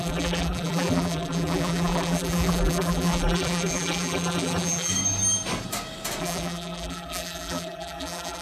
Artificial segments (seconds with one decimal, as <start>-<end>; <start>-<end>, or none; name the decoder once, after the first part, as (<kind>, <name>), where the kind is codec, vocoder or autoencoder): 0.0-4.9 (vocoder, BigVGAN v2); 6.2-8.4